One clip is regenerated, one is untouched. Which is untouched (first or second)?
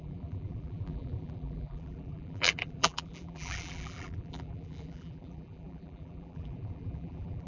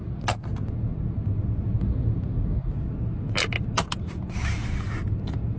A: second